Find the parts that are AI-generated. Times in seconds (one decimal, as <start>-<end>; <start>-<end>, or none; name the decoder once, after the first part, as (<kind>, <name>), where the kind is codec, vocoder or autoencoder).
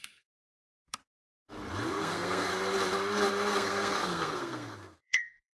0.0-1.0 (codec, SNAC); 1.9-2.5; 3.3-5.6